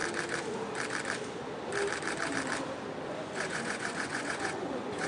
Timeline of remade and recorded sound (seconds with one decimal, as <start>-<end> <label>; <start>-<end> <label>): 0.0-3.1 recorded; 3.1-5.1 remade